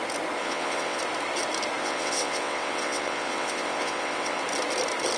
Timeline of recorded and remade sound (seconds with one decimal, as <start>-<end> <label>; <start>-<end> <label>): 0.0-0.4 recorded; 0.4-1.0 remade; 1.0-1.8 recorded; 1.8-4.4 remade; 4.4-5.2 recorded